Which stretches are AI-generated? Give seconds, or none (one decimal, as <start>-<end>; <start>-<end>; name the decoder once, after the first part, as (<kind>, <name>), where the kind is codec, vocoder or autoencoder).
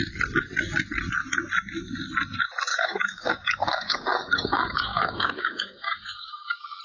2.7-6.8 (codec, DAC)